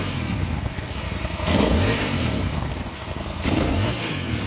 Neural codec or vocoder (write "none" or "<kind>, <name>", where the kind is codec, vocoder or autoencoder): codec, SNAC